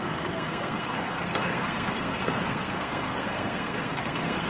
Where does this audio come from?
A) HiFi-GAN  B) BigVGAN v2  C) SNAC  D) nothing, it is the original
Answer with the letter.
C